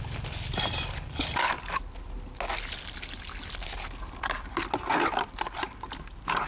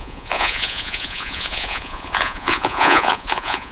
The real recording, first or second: first